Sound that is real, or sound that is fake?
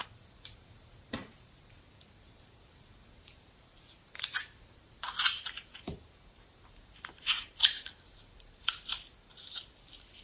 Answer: fake